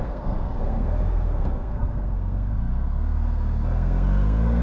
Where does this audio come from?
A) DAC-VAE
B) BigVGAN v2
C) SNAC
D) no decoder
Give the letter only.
C